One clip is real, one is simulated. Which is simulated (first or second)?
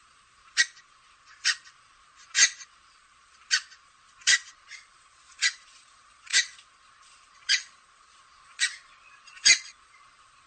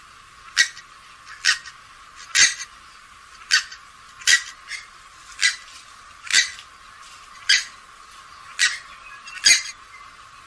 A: first